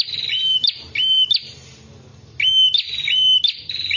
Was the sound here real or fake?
real